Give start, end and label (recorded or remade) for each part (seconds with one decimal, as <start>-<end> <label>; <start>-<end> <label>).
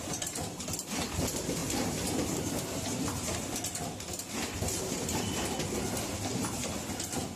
0.0-7.4 recorded